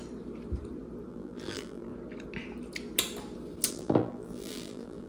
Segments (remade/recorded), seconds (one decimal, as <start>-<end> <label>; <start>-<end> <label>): 0.0-1.1 recorded; 1.1-1.9 remade; 1.9-3.7 recorded; 3.7-5.1 remade

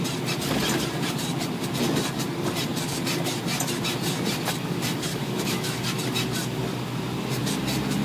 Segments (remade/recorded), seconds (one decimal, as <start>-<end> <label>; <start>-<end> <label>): 0.0-5.1 recorded; 5.1-5.8 remade; 5.8-8.0 recorded

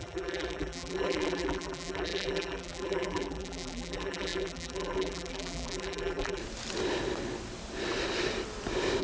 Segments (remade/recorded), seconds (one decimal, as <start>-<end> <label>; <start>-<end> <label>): 0.0-6.4 remade; 6.4-9.0 recorded

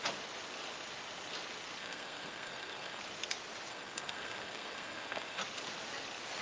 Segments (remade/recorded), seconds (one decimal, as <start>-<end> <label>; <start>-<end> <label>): 0.0-1.8 recorded; 1.8-3.0 remade; 3.0-3.7 recorded; 3.7-5.4 remade; 5.4-6.4 recorded

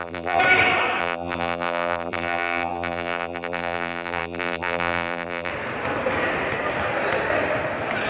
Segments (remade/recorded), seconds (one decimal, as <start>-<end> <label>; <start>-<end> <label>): 0.0-0.4 remade; 0.4-1.0 recorded; 1.0-5.5 remade; 5.5-8.1 recorded